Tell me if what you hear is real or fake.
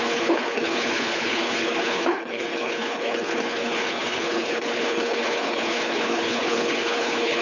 fake